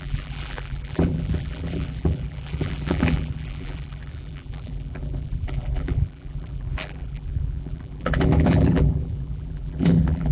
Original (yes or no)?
no